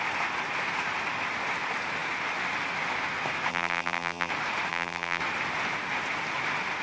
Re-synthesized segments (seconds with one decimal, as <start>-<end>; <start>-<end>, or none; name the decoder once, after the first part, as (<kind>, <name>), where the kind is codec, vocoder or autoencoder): 3.5-4.3 (vocoder, BigVGAN v2); 4.7-5.2